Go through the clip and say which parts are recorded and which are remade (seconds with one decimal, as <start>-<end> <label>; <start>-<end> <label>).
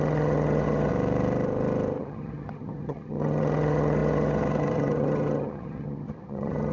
0.0-0.9 remade; 0.9-2.0 recorded; 2.0-6.7 remade